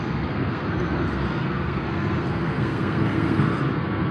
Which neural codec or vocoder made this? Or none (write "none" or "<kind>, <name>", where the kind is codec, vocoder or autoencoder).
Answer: codec, SNAC